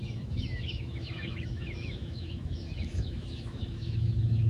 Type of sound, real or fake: fake